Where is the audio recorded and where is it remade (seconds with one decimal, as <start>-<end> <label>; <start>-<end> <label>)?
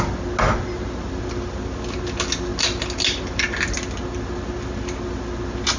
0.0-5.8 recorded